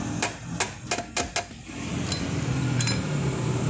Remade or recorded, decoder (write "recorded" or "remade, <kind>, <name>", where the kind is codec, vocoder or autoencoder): recorded